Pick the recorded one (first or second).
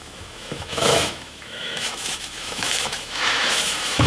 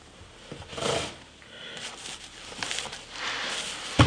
second